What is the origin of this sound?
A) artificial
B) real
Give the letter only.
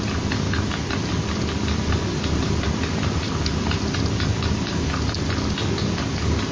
B